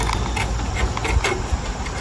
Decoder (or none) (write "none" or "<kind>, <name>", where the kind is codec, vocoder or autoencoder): none